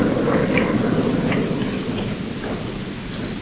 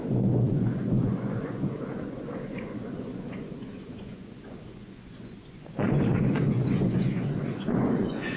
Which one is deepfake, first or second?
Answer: second